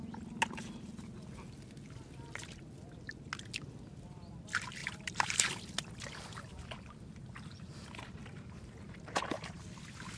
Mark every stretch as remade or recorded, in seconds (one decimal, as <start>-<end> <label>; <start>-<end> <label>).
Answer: 0.0-4.8 recorded; 4.8-5.6 remade; 5.6-8.2 recorded; 8.2-9.6 remade; 9.6-10.2 recorded